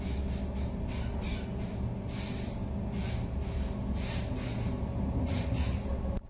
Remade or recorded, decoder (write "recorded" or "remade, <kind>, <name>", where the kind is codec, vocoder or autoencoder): recorded